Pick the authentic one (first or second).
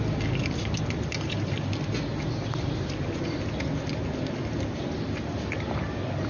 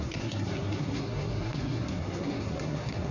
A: first